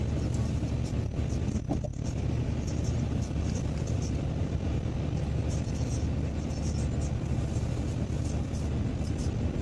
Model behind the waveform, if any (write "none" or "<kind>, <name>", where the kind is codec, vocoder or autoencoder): none